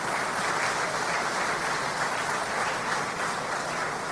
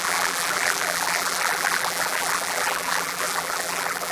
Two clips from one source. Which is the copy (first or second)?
second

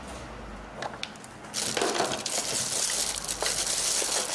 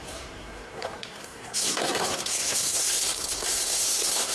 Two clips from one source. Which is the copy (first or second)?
second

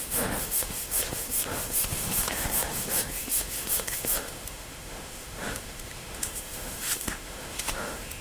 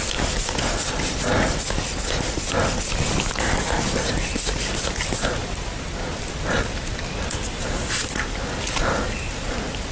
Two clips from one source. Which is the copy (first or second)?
first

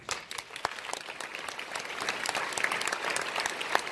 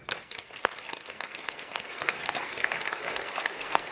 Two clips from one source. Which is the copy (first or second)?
second